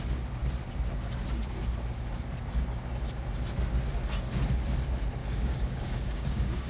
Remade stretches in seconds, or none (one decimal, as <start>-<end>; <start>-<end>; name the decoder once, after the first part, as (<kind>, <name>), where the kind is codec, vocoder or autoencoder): 5.2-6.7 (codec, DAC)